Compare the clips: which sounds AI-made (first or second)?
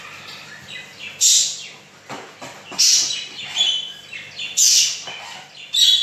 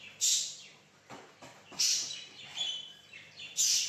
second